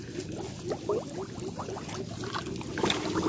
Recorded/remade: recorded